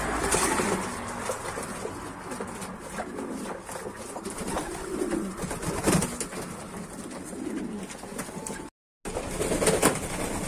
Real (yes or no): yes